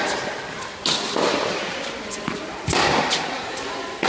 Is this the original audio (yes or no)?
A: yes